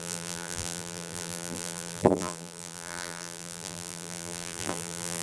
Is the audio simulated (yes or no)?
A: yes